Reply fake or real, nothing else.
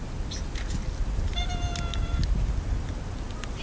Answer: real